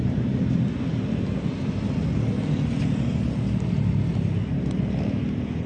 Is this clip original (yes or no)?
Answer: yes